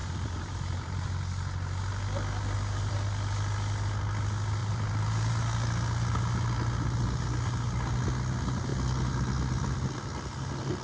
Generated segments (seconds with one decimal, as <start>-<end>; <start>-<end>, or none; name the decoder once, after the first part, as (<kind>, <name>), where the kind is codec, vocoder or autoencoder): 0.0-1.2 (vocoder, BigVGAN v2); 4.6-5.3